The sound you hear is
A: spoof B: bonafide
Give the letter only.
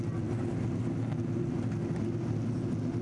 B